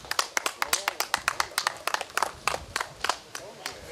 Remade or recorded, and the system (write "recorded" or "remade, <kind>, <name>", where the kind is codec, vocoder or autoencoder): recorded